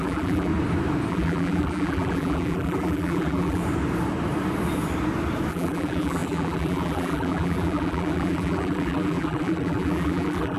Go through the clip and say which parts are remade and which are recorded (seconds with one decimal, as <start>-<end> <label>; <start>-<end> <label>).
0.0-0.5 remade; 0.5-1.1 recorded; 1.1-3.6 remade; 3.6-5.5 recorded; 5.5-10.6 remade